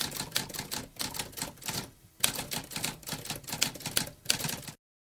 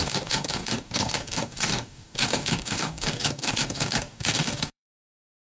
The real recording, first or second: first